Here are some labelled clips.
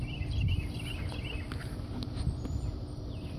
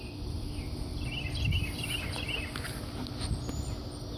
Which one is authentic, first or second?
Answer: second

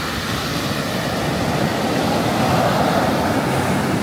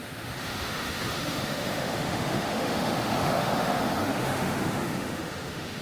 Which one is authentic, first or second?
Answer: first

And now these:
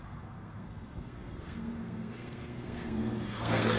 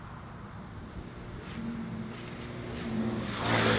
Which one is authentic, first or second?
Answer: second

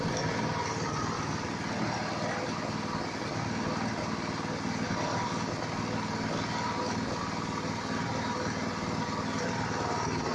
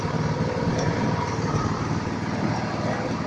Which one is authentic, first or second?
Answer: first